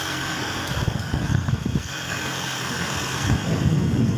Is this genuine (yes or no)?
no